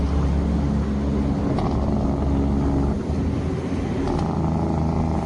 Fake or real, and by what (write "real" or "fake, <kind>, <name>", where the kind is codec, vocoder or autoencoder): real